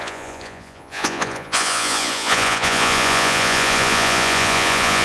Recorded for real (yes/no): no